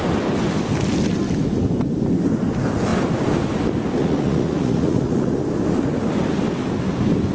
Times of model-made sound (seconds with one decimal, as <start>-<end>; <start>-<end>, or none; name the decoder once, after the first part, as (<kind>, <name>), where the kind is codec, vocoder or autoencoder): 4.0-5.3 (vocoder, Vocos)